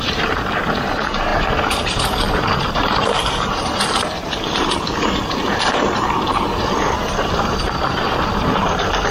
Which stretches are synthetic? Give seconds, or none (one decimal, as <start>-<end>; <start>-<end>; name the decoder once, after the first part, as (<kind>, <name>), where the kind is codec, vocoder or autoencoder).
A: 0.0-9.1 (vocoder, BigVGAN v2)